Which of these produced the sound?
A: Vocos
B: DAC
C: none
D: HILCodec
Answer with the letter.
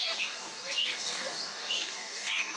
B